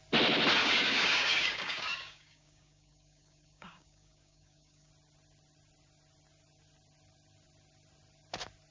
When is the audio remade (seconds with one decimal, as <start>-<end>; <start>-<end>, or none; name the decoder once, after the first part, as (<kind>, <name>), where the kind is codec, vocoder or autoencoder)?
0.6-4.9 (codec, DAC)